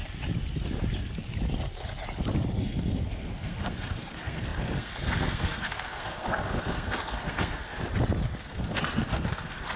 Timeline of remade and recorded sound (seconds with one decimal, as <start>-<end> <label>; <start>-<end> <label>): 0.0-2.6 recorded; 2.6-7.7 remade; 7.7-8.4 recorded; 8.4-9.8 remade